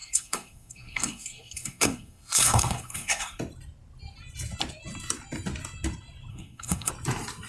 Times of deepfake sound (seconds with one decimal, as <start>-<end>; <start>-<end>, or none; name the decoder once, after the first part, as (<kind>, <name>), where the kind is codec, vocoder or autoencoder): 0.0-3.4 (codec, SNAC); 6.3-6.9